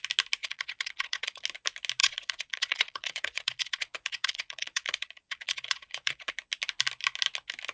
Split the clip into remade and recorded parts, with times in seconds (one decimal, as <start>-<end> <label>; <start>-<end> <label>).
0.0-0.4 recorded; 0.4-1.4 remade; 1.4-2.0 recorded; 2.0-6.3 remade; 6.3-7.7 recorded